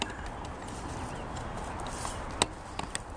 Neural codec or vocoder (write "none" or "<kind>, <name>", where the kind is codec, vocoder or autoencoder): none